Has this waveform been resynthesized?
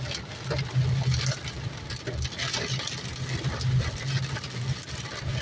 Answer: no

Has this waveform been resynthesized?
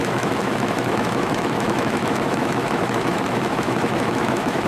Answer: yes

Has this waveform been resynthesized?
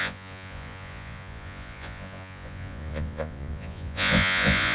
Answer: yes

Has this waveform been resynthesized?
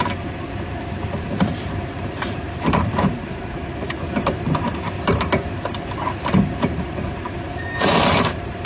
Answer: yes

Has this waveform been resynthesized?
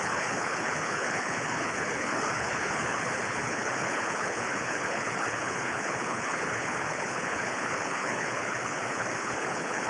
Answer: yes